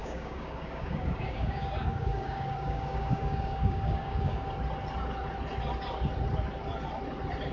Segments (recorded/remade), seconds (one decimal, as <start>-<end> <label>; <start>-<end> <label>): 0.0-4.5 remade; 4.5-7.5 recorded